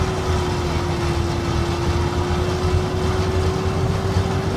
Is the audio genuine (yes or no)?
yes